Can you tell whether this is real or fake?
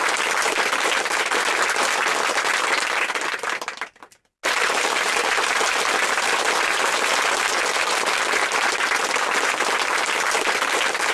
real